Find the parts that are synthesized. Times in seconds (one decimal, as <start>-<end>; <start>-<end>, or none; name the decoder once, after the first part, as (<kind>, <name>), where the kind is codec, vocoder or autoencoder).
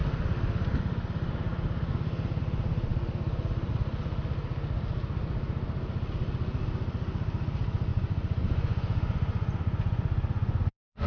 7.9-11.1 (vocoder, Vocos)